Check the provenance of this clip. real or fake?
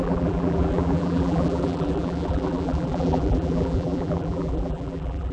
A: fake